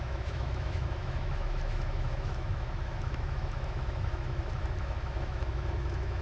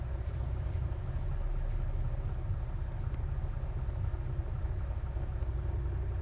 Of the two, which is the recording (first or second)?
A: second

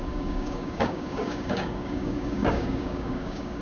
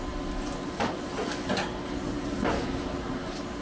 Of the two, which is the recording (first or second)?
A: second